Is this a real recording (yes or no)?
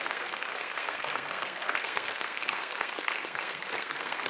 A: no